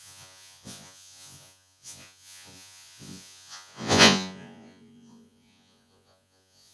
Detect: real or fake fake